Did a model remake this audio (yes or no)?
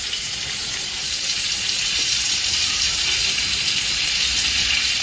yes